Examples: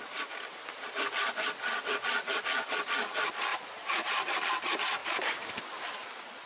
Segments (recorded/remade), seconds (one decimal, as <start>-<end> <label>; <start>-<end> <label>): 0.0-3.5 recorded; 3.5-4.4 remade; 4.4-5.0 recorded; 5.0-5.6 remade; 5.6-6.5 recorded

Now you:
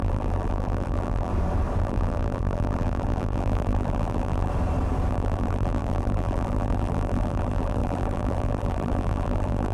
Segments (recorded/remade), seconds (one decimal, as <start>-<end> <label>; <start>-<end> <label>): 0.0-1.3 remade; 1.3-1.8 recorded; 1.8-4.5 remade; 4.5-5.1 recorded; 5.1-9.7 remade

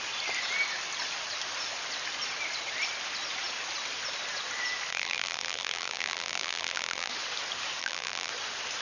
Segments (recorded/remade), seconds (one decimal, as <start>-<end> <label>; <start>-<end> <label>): 0.0-4.9 recorded; 4.9-7.1 remade; 7.1-7.8 recorded; 7.8-8.3 remade; 8.3-8.8 recorded

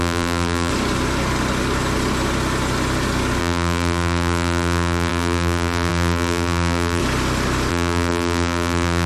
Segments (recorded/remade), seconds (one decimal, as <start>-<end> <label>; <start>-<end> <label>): 0.0-0.7 remade; 0.7-3.4 recorded; 3.4-7.0 remade; 7.0-7.7 recorded; 7.7-9.1 remade

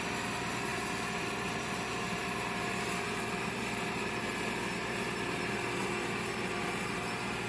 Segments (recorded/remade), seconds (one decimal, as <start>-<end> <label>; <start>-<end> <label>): 0.0-0.7 recorded; 0.7-3.6 remade; 3.6-7.5 recorded

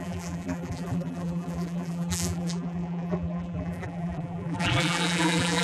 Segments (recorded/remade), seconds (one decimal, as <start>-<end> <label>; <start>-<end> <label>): 0.0-5.6 remade

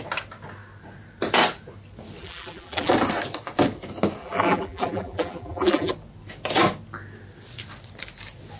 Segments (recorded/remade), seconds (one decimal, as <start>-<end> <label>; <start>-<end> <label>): 0.0-2.2 recorded; 2.2-2.9 remade; 2.9-4.2 recorded; 4.2-5.9 remade; 5.9-8.6 recorded

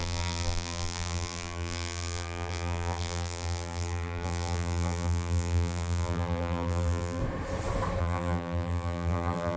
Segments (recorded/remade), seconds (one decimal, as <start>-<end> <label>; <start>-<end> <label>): 0.0-7.2 remade; 7.2-8.0 recorded; 8.0-9.6 remade